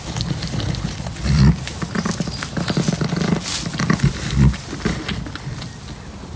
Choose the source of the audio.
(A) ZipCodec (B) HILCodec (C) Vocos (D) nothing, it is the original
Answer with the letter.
D